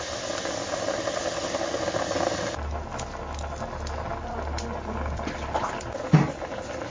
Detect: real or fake real